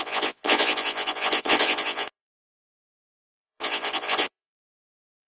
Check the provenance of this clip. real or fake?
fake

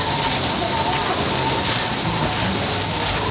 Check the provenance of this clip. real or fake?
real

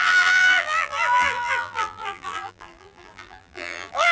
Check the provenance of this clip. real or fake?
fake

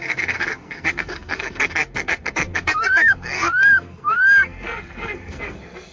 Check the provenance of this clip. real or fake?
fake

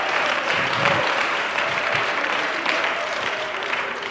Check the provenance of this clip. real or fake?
fake